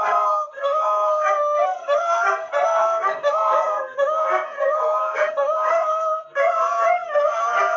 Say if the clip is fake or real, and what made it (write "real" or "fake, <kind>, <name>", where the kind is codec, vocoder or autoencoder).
fake, codec, SNAC